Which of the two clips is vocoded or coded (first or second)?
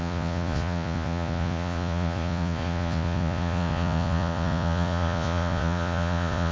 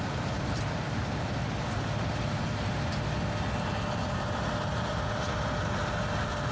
first